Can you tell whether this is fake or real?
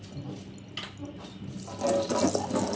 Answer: real